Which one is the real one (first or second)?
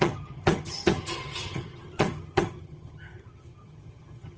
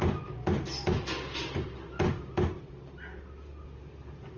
second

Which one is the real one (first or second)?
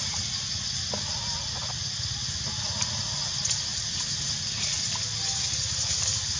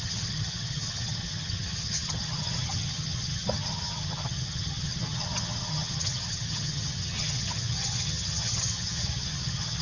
first